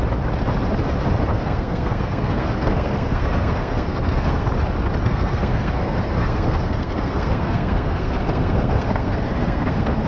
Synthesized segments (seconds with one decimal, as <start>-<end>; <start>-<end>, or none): 1.3-4.5; 5.0-10.1